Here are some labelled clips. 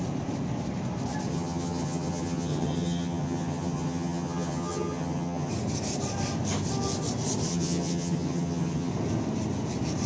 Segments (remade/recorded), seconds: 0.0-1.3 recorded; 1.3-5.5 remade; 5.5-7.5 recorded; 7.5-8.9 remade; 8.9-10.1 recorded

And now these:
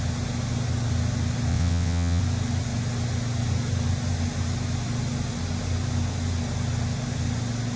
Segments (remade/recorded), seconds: 0.0-1.5 recorded; 1.5-2.2 remade; 2.2-7.8 recorded

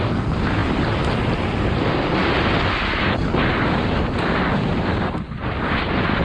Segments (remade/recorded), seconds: 0.0-6.2 recorded

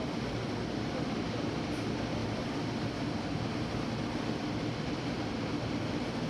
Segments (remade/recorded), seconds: 0.0-6.3 recorded

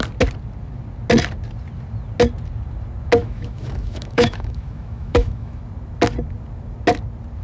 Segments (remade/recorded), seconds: 0.0-3.2 recorded; 3.2-5.6 remade; 5.6-7.4 recorded

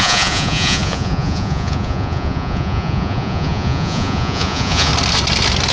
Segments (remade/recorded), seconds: 0.0-4.9 remade; 4.9-5.7 recorded

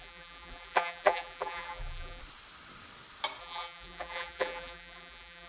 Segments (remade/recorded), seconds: 0.0-2.2 remade; 2.2-3.4 recorded; 3.4-5.5 remade